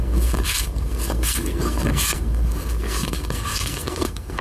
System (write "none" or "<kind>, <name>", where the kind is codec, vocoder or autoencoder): codec, SNAC